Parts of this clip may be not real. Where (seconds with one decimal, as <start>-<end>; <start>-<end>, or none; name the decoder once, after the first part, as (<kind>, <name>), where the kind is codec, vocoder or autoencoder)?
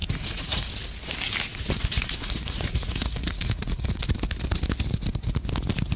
0.0-0.7 (vocoder, Vocos); 1.5-4.0